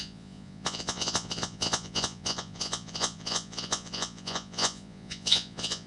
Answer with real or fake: fake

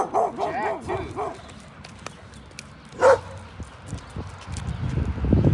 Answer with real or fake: real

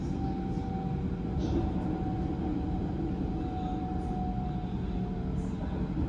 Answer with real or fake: real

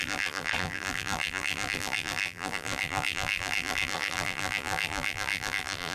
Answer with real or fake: fake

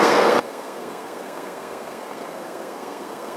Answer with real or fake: fake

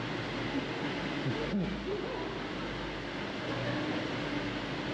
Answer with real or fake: real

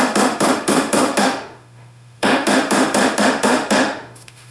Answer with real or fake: fake